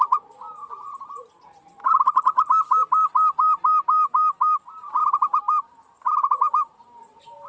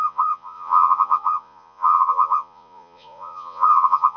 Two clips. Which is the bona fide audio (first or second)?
first